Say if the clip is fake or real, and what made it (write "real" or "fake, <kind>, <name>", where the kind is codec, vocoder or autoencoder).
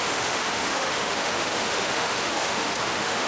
fake, autoencoder, DAC-VAE